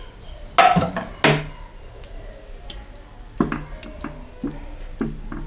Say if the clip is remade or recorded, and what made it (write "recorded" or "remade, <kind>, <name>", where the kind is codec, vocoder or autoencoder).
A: recorded